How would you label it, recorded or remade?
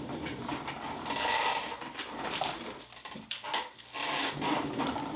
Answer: remade